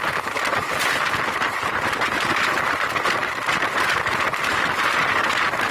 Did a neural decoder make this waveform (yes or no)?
yes